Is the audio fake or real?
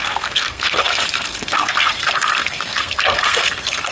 fake